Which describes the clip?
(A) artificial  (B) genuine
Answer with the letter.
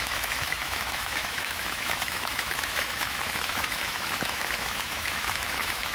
A